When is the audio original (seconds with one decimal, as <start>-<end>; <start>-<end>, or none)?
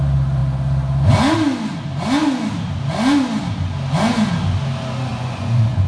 0.0-5.1